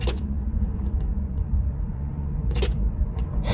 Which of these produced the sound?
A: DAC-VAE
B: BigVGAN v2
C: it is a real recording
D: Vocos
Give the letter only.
D